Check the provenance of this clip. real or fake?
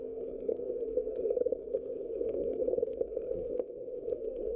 fake